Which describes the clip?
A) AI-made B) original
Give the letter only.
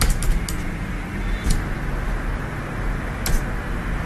B